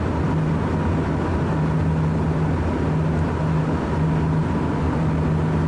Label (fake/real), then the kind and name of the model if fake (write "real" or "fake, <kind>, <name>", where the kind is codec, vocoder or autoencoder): real